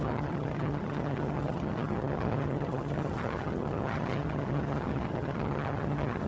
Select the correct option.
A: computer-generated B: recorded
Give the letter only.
A